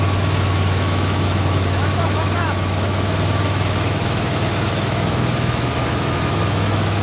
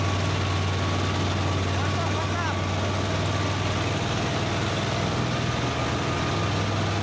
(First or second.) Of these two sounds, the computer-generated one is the first